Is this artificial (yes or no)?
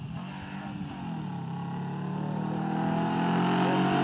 no